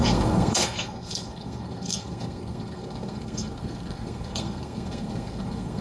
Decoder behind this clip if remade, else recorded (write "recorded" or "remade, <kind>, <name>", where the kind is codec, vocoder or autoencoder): remade, codec, SNAC